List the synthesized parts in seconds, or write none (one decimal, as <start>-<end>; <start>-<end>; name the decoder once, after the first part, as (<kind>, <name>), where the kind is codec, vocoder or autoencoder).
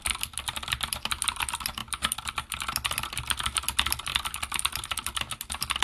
0.0-1.4 (vocoder, BigVGAN v2); 1.8-2.4